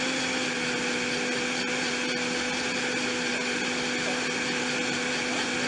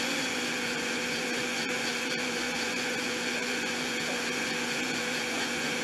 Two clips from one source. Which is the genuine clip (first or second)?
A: first